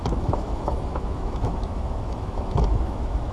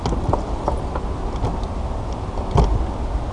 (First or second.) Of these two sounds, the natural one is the second